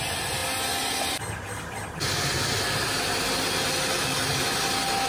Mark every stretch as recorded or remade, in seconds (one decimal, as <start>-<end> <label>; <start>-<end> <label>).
0.0-5.1 recorded